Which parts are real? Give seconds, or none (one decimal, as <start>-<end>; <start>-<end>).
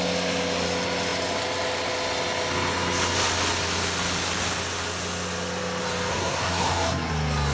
0.0-6.1; 7.1-7.5